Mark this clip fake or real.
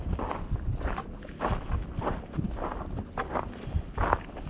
real